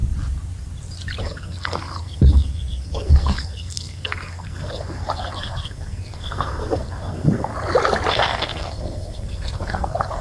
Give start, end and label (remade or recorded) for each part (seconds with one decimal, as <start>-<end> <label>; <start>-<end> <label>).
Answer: 0.0-1.2 recorded; 1.2-7.5 remade; 7.5-8.1 recorded; 8.1-10.2 remade